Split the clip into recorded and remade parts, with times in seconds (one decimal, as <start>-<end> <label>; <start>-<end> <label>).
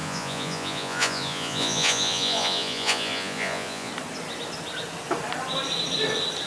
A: 0.0-3.9 remade; 3.9-6.5 recorded